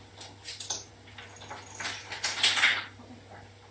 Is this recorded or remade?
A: recorded